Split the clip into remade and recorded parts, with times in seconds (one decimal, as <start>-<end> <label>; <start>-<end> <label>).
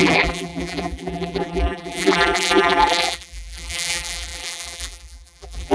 0.0-5.7 remade